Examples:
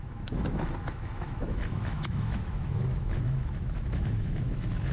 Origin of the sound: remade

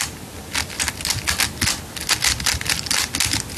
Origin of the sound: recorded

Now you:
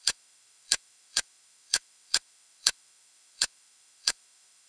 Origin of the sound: remade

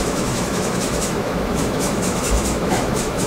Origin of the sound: remade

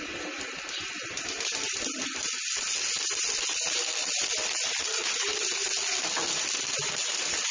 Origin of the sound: recorded